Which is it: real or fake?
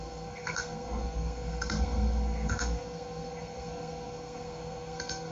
fake